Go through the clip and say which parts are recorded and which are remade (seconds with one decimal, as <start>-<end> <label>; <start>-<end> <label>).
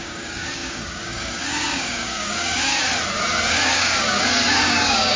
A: 0.0-2.9 remade; 2.9-3.5 recorded; 3.5-5.2 remade